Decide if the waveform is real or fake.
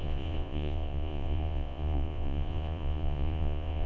fake